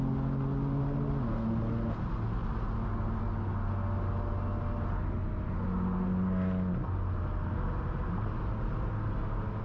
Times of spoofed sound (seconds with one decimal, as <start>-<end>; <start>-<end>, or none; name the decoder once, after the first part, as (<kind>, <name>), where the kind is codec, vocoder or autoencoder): none